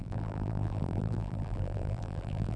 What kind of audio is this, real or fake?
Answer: fake